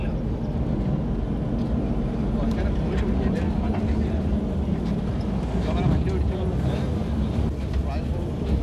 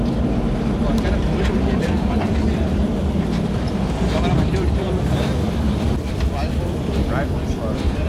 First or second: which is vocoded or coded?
second